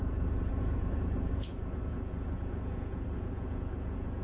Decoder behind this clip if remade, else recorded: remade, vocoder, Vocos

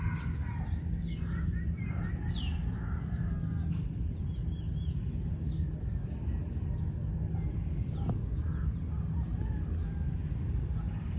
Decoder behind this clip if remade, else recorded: recorded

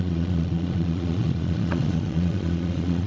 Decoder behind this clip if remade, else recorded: remade, vocoder, Vocos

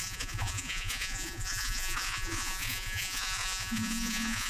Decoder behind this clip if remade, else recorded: remade, vocoder, Vocos